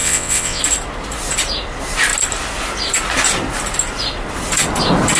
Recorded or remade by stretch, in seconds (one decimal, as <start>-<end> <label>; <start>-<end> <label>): 0.0-0.6 remade; 0.6-5.2 recorded